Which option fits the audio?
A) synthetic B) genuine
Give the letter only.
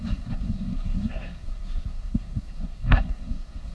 A